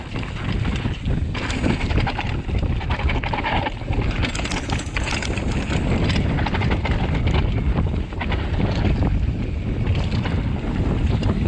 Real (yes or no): yes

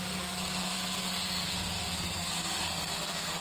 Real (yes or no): no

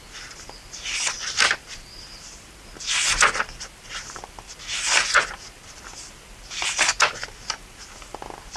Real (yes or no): yes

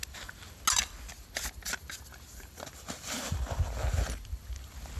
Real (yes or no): yes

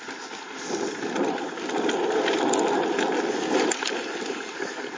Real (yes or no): yes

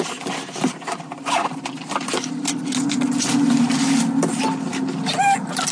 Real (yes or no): yes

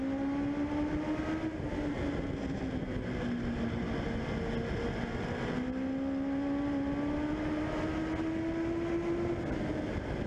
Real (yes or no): yes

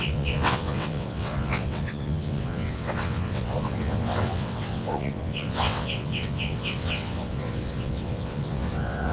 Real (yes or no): no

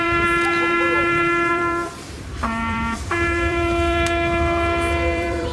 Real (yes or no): no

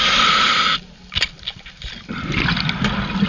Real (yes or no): yes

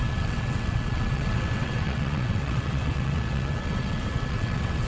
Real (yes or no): no